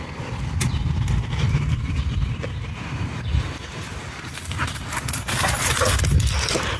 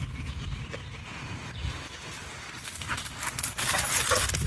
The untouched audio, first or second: second